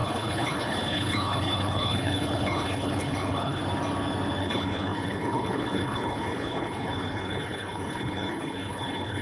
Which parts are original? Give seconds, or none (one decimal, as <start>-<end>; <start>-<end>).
3.6-4.4